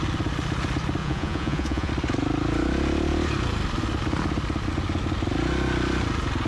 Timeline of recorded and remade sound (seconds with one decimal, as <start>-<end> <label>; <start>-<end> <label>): 0.0-1.0 recorded; 1.0-1.9 remade; 1.9-6.5 recorded